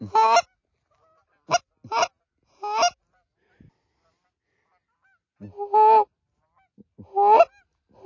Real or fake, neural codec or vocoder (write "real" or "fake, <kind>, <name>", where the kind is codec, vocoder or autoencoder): real